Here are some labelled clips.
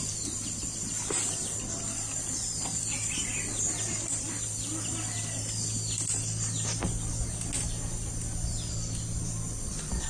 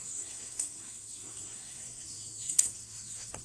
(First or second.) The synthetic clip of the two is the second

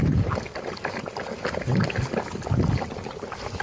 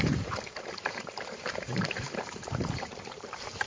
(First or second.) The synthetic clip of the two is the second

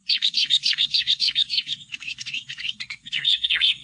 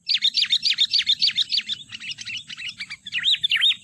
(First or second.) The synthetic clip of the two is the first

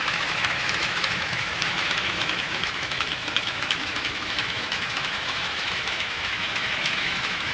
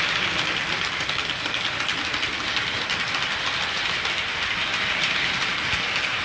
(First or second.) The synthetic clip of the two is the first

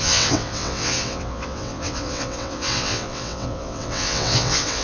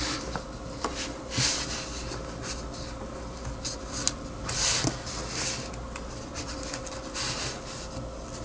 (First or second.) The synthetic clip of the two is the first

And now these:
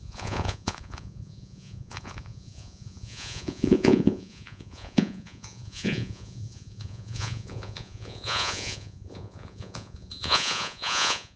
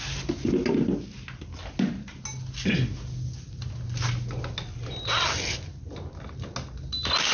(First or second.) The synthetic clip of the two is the first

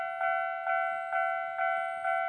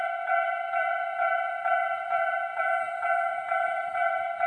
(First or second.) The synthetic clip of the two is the second